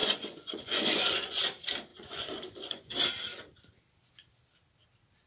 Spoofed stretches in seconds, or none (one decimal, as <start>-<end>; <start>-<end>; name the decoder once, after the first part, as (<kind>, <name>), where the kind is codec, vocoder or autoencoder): 0.0-1.4 (vocoder, Vocos); 1.9-2.9